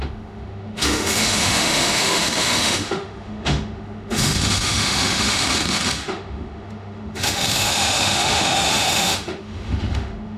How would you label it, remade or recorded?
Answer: remade